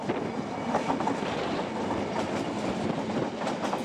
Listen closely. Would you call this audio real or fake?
real